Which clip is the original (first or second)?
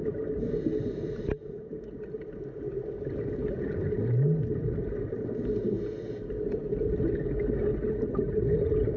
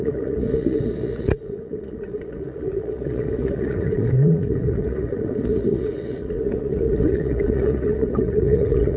first